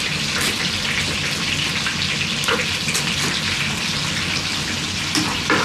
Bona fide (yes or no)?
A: yes